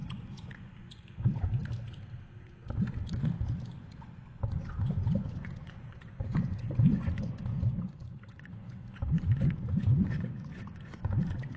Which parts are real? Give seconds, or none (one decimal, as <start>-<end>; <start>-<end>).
1.6-3.8